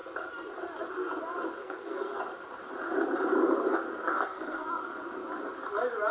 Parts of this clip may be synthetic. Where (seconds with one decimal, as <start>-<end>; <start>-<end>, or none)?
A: 1.6-2.2; 4.0-4.7